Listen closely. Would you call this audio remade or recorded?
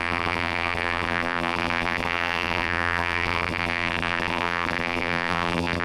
remade